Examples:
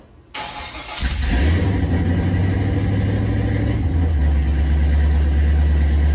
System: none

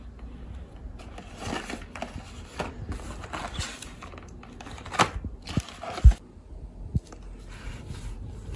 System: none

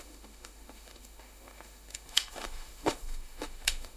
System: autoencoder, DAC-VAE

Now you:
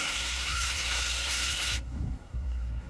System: codec, SNAC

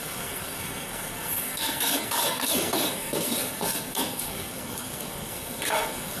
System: codec, SNAC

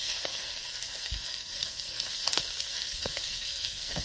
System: codec, SNAC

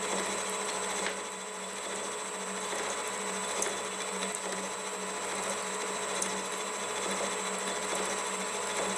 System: none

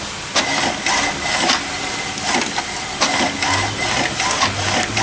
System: none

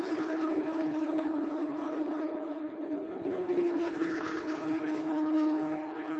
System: codec, HILCodec